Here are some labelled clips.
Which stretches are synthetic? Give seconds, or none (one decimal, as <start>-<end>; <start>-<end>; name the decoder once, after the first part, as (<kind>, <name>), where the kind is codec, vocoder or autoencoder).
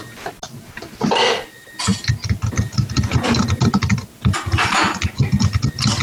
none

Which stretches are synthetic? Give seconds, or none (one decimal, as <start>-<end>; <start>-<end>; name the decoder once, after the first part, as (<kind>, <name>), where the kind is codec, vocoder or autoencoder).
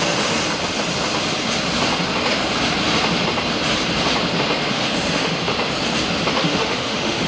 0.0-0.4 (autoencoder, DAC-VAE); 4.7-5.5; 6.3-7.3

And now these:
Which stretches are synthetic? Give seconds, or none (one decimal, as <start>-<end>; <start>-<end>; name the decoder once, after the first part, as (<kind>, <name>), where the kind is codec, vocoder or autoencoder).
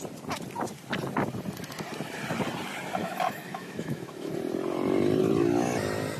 3.0-4.3 (autoencoder, DAC-VAE)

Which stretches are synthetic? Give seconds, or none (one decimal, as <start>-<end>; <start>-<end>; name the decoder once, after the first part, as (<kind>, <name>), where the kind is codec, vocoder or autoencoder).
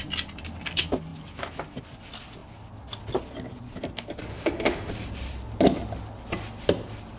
4.3-4.9 (autoencoder, DAC-VAE)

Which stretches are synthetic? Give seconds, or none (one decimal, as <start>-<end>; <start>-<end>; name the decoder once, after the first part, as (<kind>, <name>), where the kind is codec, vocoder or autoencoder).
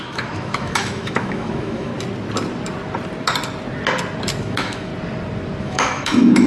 0.0-1.9 (autoencoder, DAC-VAE); 4.4-4.9; 5.6-6.5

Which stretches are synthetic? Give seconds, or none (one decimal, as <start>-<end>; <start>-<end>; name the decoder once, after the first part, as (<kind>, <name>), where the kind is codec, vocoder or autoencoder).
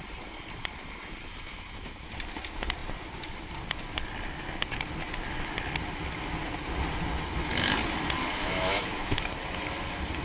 1.3-2.1 (autoencoder, DAC-VAE); 8.4-9.2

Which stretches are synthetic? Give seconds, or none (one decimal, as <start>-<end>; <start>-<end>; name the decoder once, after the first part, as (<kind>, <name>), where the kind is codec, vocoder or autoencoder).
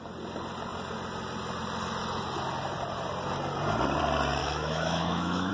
4.4-5.5 (autoencoder, DAC-VAE)